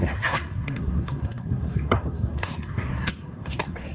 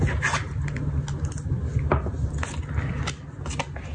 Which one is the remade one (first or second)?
first